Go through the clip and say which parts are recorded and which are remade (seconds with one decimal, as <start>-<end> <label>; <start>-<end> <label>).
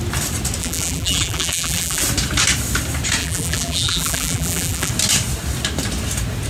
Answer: 0.0-0.6 recorded; 0.6-2.0 remade; 2.0-3.2 recorded; 3.2-4.9 remade; 4.9-6.5 recorded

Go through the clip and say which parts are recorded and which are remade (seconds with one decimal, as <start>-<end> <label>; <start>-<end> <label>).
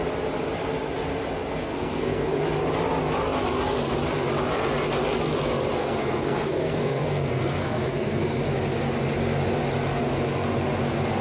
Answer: 0.0-1.6 recorded; 1.6-2.3 remade; 2.3-5.8 recorded; 5.8-8.4 remade; 8.4-11.2 recorded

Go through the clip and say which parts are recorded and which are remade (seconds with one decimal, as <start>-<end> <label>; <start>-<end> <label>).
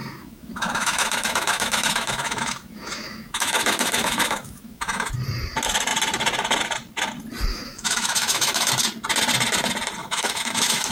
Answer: 0.0-5.1 remade; 5.1-7.5 recorded; 7.5-8.7 remade; 8.7-10.0 recorded; 10.0-10.9 remade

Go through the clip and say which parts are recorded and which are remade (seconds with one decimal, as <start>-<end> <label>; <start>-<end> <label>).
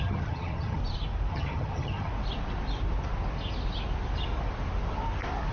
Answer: 0.0-0.8 remade; 0.8-1.3 recorded; 1.3-2.1 remade; 2.1-5.5 recorded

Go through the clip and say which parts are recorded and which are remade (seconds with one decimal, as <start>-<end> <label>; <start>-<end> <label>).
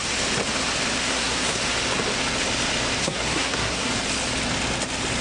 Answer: 0.0-1.0 recorded; 1.0-1.6 remade; 1.6-3.0 recorded; 3.0-3.9 remade; 3.9-5.2 recorded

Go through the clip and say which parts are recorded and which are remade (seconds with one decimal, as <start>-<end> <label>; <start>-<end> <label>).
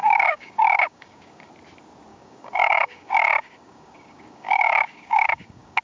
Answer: 0.0-1.5 remade; 1.5-2.1 recorded; 2.1-5.8 remade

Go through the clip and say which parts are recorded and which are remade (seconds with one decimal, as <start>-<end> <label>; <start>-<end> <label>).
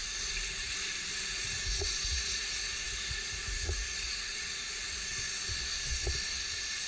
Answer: 0.0-0.7 remade; 0.7-1.1 recorded; 1.1-5.2 remade; 5.2-6.9 recorded